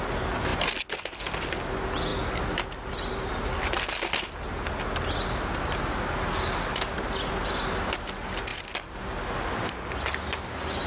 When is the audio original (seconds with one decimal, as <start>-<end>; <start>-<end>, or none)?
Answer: 0.0-10.9